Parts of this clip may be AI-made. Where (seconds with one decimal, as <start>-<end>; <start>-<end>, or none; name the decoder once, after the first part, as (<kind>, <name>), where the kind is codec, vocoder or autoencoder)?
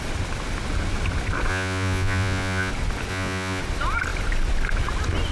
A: 1.5-2.7 (vocoder, Vocos); 3.1-3.6